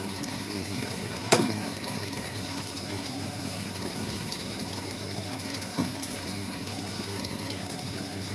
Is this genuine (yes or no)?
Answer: no